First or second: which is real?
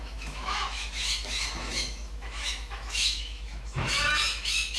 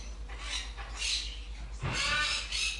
second